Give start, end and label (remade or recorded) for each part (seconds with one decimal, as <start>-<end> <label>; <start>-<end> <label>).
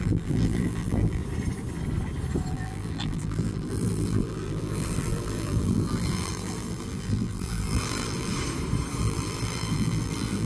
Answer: 0.0-1.2 remade; 1.2-2.5 recorded; 2.5-8.3 remade; 8.3-9.0 recorded; 9.0-10.5 remade